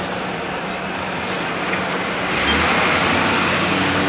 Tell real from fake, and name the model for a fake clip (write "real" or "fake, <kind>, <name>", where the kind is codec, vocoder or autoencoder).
real